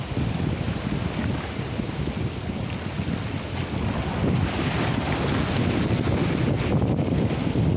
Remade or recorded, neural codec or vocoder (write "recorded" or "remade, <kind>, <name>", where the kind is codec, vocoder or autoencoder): recorded